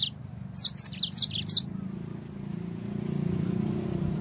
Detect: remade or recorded recorded